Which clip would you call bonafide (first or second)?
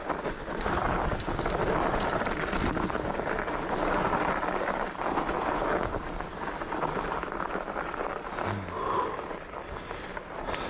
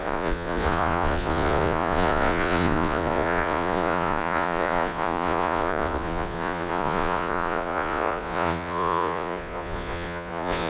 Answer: first